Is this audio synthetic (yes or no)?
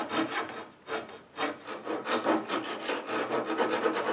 no